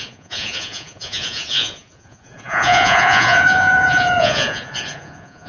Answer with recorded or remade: remade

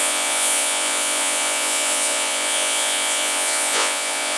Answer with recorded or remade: remade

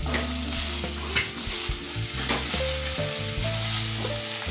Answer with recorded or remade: recorded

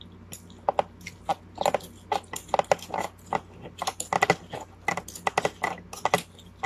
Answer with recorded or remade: recorded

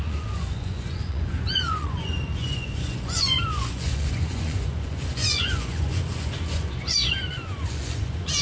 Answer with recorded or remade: remade